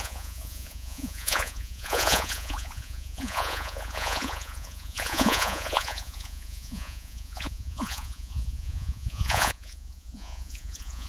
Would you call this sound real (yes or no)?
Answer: no